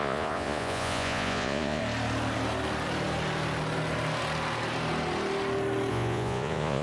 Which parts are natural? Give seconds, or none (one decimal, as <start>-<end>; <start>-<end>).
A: 1.8-5.9